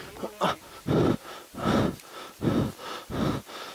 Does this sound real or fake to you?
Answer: real